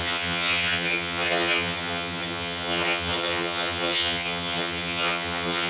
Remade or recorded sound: remade